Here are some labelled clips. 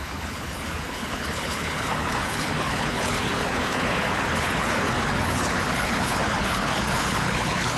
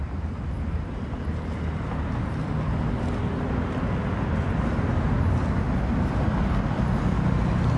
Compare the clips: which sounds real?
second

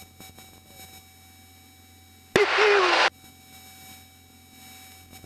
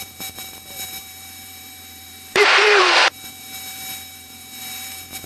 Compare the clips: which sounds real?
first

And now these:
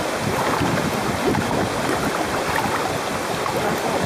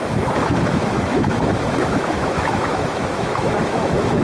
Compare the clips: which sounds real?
first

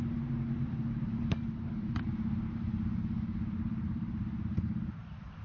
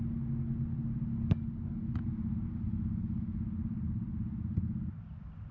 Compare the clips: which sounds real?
second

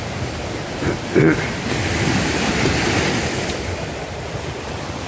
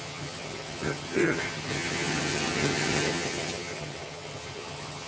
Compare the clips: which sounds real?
first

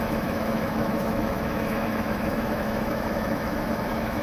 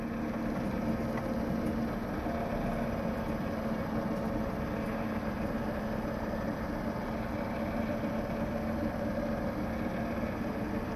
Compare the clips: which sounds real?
second